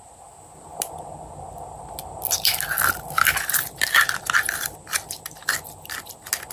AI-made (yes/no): no